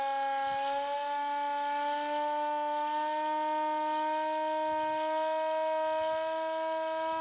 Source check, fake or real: real